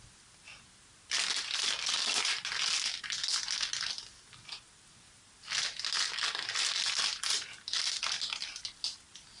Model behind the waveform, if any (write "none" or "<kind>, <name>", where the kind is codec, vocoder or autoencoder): none